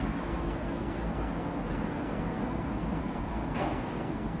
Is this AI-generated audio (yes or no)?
yes